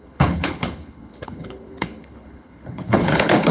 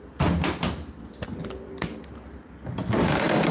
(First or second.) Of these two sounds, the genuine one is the second